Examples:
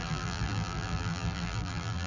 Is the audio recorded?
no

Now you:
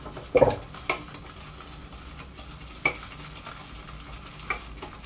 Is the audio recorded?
yes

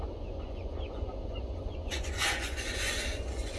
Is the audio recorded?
no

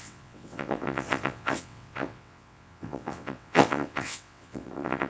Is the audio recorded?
no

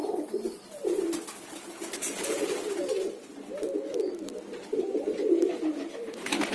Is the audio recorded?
yes